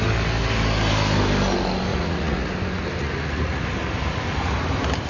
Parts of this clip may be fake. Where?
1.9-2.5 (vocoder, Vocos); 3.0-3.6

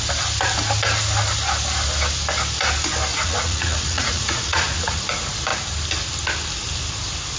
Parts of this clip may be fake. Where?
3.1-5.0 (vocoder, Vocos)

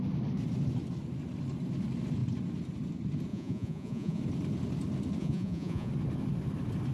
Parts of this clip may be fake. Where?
3.3-4.2 (vocoder, Vocos); 5.2-5.9

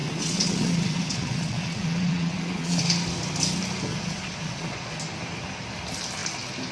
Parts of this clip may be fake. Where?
0.0-2.8 (vocoder, Vocos); 3.9-5.0

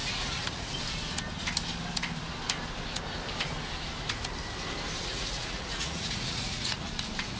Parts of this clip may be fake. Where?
0.0-0.7 (vocoder, Vocos); 5.0-6.9